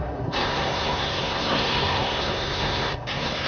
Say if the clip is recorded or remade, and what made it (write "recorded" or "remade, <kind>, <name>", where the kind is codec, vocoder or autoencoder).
remade, codec, SNAC